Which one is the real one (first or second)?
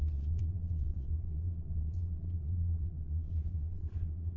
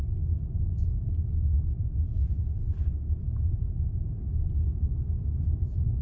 second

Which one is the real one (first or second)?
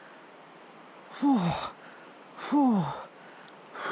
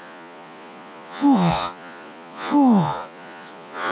first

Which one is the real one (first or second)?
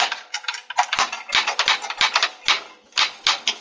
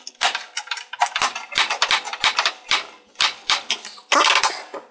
first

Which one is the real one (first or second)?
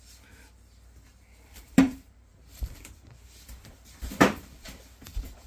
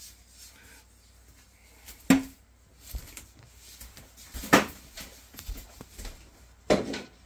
second